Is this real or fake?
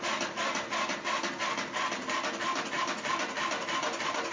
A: real